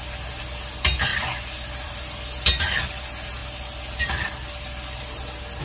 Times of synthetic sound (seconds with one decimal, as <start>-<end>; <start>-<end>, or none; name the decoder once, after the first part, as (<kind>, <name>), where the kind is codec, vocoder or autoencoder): 1.1-2.8 (vocoder, BigVGAN v2)